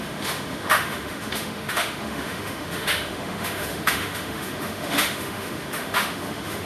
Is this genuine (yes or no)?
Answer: no